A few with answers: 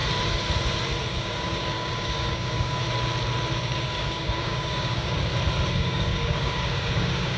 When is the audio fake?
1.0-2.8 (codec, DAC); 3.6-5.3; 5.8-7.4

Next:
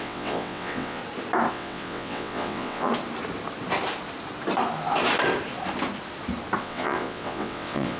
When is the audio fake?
0.0-1.0 (vocoder, WaveNeXt); 1.5-2.9; 6.6-8.0

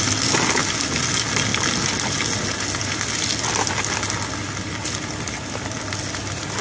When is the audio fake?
none